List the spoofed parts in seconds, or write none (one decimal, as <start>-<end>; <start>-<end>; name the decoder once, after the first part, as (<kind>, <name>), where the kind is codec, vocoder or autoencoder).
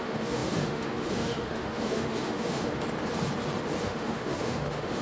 0.0-2.7 (autoencoder, DAC-VAE); 3.8-5.0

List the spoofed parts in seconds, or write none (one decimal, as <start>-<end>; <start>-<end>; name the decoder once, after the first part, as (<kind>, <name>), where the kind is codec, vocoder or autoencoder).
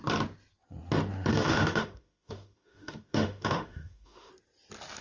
1.3-4.3 (autoencoder, DAC-VAE)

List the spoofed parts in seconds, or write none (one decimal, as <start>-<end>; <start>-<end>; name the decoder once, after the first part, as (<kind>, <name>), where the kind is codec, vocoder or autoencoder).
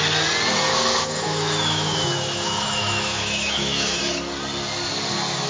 0.7-4.0 (autoencoder, DAC-VAE)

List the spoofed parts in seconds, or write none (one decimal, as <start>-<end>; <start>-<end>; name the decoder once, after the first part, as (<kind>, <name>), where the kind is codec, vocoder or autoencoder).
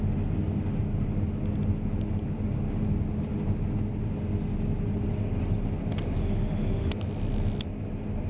6.2-6.9 (autoencoder, DAC-VAE)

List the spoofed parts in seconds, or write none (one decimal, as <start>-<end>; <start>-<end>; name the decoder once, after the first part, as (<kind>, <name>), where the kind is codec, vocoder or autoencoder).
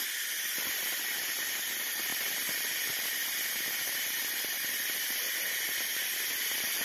none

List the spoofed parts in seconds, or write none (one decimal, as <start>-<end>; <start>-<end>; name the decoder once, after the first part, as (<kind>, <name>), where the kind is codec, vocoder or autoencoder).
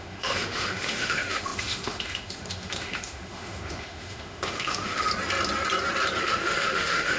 0.0-5.1 (autoencoder, DAC-VAE); 6.2-7.2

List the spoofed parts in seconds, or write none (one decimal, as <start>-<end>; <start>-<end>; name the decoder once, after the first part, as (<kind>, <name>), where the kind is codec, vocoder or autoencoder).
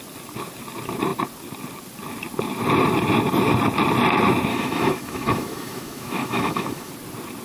4.5-6.9 (autoencoder, DAC-VAE)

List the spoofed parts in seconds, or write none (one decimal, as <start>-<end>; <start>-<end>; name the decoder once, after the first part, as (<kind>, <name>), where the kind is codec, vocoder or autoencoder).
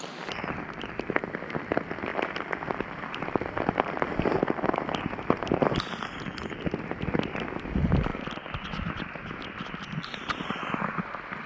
none